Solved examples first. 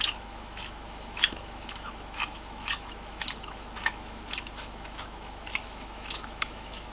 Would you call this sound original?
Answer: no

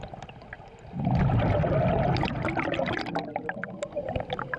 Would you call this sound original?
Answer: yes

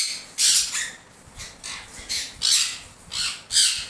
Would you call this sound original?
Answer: yes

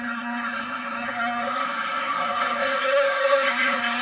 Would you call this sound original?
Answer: no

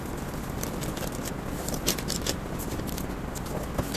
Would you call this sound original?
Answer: yes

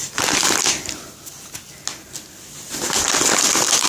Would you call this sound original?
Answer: yes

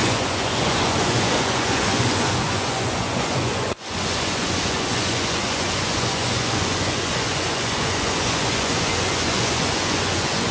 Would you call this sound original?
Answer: no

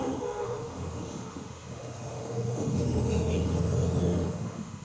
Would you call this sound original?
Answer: no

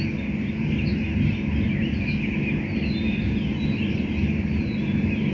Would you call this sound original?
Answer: yes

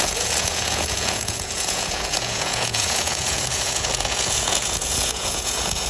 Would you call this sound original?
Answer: no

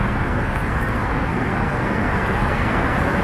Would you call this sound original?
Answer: no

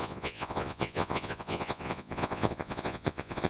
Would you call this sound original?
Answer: no